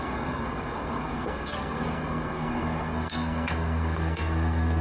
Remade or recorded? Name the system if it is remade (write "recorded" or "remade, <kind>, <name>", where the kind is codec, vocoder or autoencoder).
remade, codec, SNAC